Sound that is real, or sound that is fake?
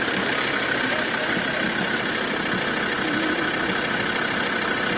real